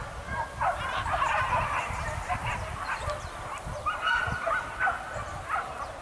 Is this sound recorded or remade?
recorded